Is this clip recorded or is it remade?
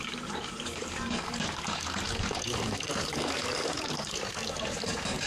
remade